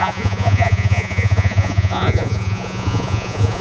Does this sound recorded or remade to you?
remade